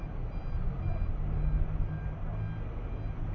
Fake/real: real